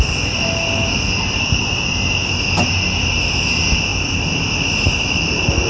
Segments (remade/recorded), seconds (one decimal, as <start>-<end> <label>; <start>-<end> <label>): 0.0-5.7 recorded